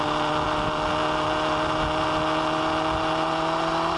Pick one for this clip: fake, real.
real